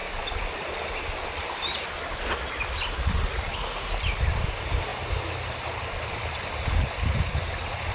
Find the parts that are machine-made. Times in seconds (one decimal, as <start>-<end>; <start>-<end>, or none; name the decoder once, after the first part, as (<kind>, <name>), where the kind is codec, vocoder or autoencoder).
4.1-4.9 (vocoder, BigVGAN v2)